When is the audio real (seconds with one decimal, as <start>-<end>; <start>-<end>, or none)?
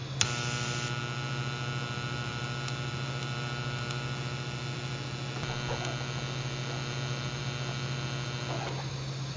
0.0-9.4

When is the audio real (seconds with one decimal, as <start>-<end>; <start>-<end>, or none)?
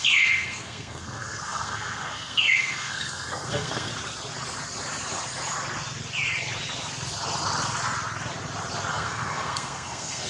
3.9-8.9